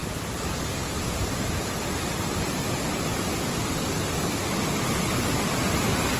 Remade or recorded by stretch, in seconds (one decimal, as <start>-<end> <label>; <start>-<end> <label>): 0.0-1.5 recorded; 1.5-4.4 remade; 4.4-6.2 recorded